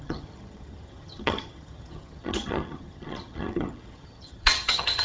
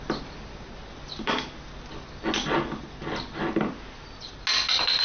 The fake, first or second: first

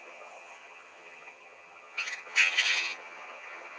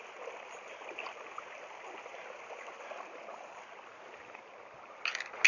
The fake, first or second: first